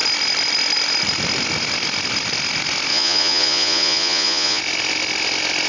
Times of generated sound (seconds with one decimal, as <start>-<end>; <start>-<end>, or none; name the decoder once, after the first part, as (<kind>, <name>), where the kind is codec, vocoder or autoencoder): 2.9-4.6 (vocoder, Vocos)